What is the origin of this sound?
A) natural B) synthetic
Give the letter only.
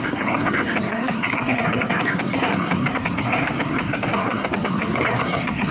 B